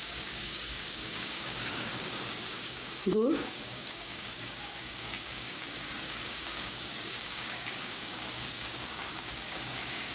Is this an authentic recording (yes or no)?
no